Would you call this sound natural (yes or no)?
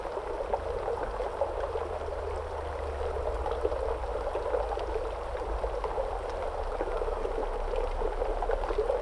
yes